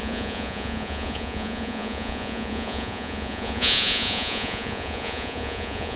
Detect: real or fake fake